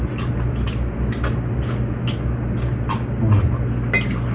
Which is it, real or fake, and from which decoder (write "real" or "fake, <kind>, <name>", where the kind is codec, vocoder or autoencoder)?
real